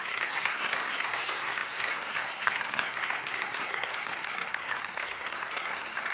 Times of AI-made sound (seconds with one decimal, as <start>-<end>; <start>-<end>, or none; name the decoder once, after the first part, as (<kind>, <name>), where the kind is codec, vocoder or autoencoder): 0.0-6.1 (codec, SNAC)

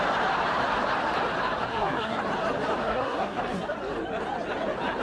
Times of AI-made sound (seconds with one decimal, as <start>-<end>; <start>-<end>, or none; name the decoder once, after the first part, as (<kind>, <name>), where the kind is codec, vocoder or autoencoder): 1.7-2.2 (codec, SNAC); 2.8-3.4

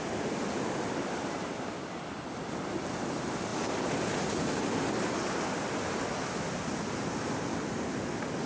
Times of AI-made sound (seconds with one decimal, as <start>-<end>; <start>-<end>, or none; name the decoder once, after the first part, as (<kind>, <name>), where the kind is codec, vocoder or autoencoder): none

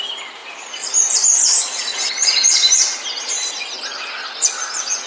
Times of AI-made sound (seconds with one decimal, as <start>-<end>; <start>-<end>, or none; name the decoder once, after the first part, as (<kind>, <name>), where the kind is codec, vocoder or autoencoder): none

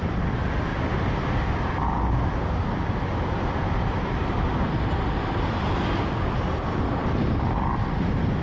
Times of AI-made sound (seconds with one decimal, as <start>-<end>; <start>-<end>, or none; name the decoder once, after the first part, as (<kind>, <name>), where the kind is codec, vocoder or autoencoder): 0.0-0.7 (vocoder, BigVGAN v2); 2.7-8.4

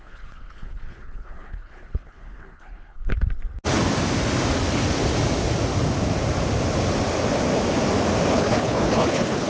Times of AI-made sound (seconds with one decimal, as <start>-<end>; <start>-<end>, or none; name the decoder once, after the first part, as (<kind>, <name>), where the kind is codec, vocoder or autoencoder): 0.0-3.1 (codec, HILCodec); 8.3-9.5

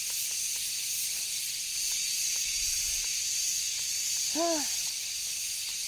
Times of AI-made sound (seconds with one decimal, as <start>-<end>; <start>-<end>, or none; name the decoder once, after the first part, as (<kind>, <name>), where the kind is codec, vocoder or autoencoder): none

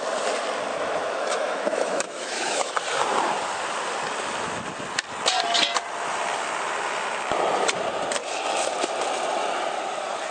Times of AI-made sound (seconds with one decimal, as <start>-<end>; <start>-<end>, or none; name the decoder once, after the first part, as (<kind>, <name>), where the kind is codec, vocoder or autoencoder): 0.7-2.7 (autoencoder, DAC-VAE)